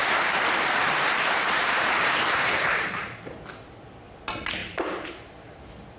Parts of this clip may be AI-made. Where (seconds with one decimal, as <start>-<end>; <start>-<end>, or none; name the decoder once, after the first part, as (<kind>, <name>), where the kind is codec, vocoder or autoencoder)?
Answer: 0.0-3.6 (vocoder, BigVGAN v2); 4.6-5.6